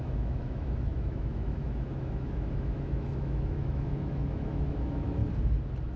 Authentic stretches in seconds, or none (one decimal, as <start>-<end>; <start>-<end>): 5.2-6.0